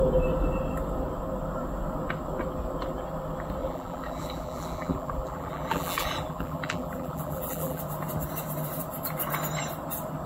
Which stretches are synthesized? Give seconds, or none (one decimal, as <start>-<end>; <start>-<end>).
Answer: 3.6-7.8